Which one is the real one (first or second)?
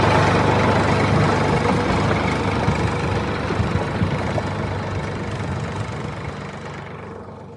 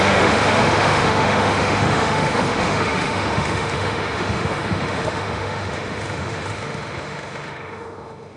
first